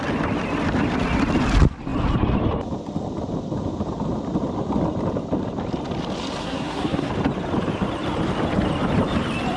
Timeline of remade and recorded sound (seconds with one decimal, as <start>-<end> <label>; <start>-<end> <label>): 0.0-6.4 recorded; 6.4-7.1 remade; 7.1-9.6 recorded